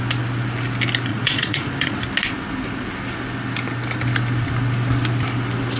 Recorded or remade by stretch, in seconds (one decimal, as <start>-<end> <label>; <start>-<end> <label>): 0.0-1.1 recorded; 1.1-2.0 remade; 2.0-5.8 recorded